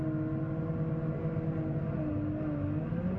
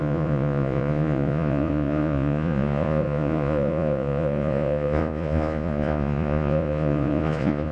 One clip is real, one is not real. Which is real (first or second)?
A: first